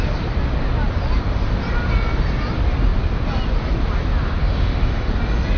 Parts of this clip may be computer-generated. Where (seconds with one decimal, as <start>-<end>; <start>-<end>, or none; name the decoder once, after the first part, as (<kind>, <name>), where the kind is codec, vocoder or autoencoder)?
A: 4.4-5.1 (autoencoder, DAC-VAE)